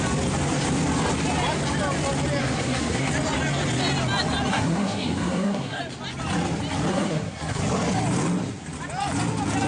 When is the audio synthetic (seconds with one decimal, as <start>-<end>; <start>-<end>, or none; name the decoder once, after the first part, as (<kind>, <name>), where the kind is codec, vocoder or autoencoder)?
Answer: 2.4-3.1 (codec, SNAC); 4.5-5.8; 6.9-7.6